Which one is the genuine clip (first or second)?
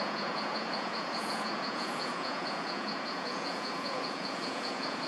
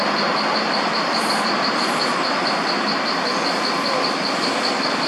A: second